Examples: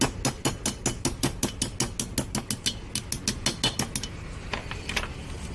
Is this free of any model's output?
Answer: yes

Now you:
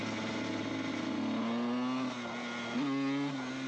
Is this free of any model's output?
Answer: yes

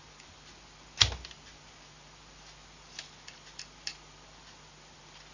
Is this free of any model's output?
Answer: yes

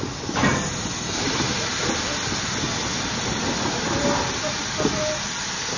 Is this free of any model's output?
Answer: yes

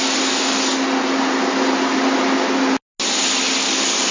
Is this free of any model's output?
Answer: yes